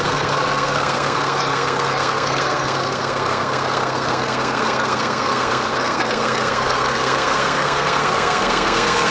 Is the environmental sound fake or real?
fake